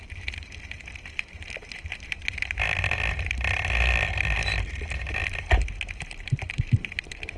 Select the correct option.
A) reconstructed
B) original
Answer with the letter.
B